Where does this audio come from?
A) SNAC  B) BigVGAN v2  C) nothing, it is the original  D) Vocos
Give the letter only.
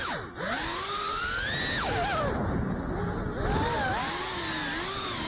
C